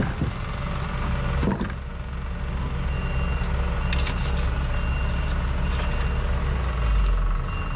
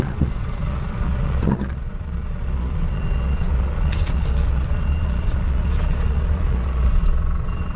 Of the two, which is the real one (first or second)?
first